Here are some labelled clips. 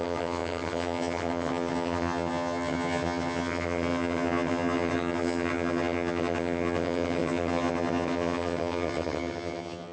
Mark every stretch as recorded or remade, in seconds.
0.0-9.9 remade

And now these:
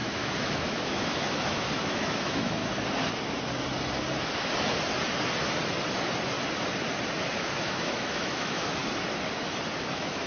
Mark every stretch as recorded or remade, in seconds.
0.0-2.6 remade; 2.6-7.4 recorded; 7.4-8.8 remade; 8.8-9.9 recorded; 9.9-10.3 remade